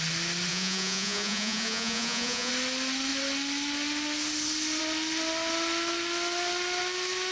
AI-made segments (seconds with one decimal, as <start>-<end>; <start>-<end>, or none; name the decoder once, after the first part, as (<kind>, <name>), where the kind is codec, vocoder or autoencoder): 0.5-2.5 (vocoder, Vocos)